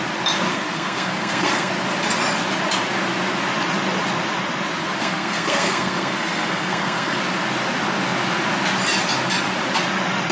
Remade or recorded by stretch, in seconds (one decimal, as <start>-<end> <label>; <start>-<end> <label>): 0.0-0.5 recorded; 0.5-1.7 remade; 1.7-5.0 recorded; 5.0-7.2 remade; 7.2-10.3 recorded